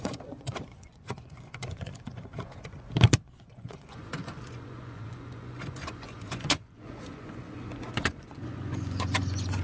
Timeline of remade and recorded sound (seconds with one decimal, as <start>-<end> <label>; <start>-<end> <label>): 0.0-9.6 remade